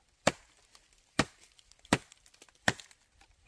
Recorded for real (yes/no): yes